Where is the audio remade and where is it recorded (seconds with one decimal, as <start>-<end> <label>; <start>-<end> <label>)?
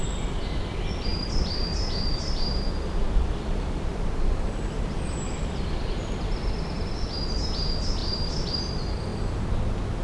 0.0-1.1 recorded; 1.1-4.6 remade; 4.6-8.0 recorded; 8.0-8.6 remade; 8.6-10.0 recorded